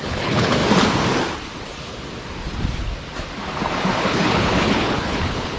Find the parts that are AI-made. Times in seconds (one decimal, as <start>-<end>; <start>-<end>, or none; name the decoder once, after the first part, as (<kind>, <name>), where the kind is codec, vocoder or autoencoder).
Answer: 0.0-0.6 (codec, HILCodec); 4.0-5.6